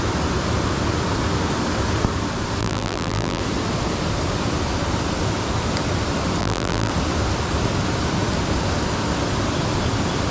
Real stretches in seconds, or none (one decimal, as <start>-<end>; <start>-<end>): 0.0-2.6; 3.4-6.4; 6.9-10.3